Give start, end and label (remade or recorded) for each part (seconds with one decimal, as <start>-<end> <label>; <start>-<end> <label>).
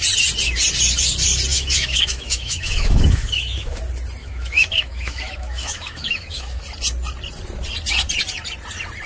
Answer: 0.0-1.5 recorded; 1.5-3.8 remade; 3.8-4.2 recorded; 4.2-6.6 remade; 6.6-9.1 recorded